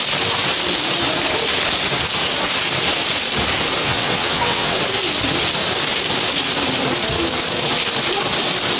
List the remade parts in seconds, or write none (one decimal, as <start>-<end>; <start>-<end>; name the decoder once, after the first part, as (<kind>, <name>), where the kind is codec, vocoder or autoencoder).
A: 3.8-4.8 (vocoder, WaveNeXt)